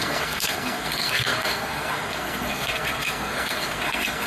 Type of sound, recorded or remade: remade